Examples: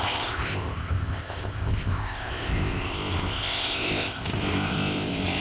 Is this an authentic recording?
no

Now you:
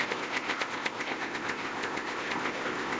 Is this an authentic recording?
no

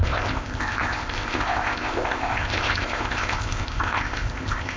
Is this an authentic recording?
no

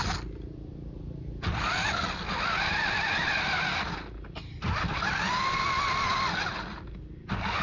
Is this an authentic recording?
yes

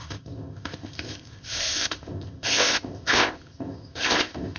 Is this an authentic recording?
no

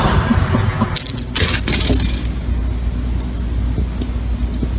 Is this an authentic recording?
yes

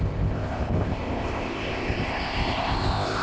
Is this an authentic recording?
no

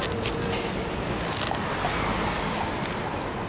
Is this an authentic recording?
yes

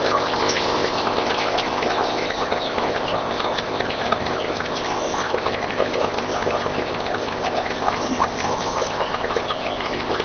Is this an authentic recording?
no